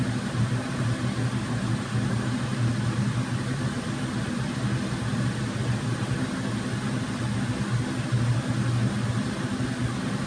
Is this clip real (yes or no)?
yes